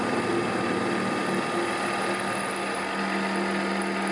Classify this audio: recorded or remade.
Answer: recorded